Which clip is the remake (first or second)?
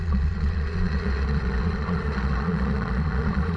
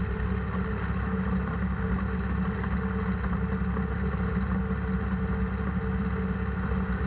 first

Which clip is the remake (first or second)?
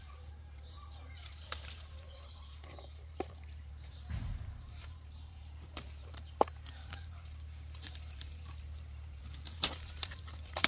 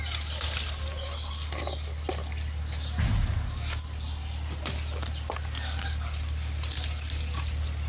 first